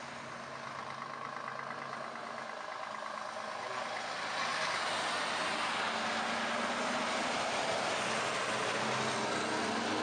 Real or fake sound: real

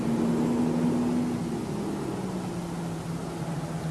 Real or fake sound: real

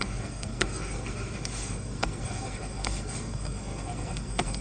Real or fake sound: fake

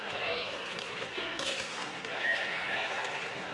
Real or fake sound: fake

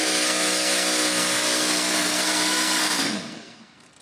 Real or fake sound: fake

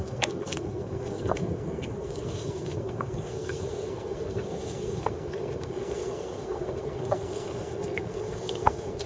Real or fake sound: fake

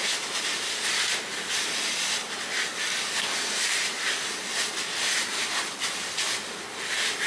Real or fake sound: real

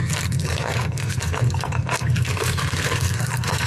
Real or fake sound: fake